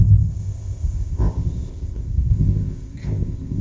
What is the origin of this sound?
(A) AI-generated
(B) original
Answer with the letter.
A